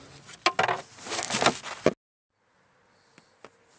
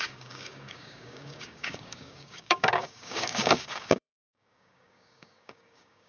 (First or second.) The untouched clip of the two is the first